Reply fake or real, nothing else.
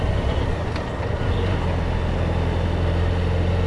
real